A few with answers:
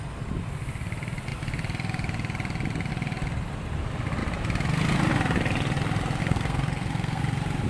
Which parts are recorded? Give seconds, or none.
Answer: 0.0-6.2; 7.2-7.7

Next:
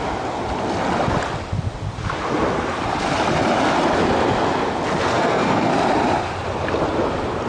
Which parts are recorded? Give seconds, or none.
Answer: 0.0-5.1; 5.7-7.5